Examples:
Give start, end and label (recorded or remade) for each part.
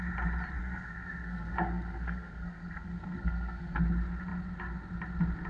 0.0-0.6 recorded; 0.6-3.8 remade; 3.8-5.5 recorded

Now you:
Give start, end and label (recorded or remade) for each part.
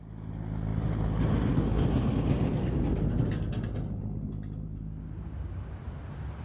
0.0-6.4 recorded